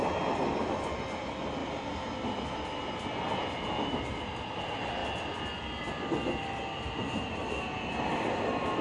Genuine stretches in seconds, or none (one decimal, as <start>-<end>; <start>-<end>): 0.0-8.8

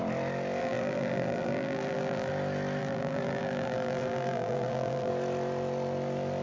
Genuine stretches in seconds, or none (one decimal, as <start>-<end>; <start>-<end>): 0.0-0.6; 2.3-2.8; 5.1-6.4

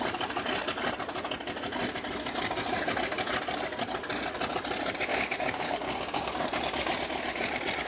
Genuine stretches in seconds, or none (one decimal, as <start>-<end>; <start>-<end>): 0.0-5.1; 6.9-7.9